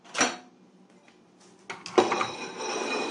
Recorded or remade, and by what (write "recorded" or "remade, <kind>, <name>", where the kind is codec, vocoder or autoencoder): recorded